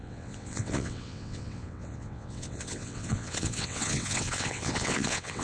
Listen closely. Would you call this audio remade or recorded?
remade